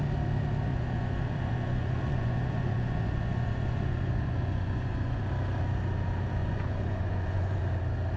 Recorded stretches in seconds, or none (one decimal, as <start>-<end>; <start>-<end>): 0.0-0.7; 5.2-6.4; 7.6-8.2